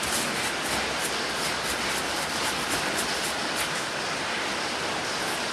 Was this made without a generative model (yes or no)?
yes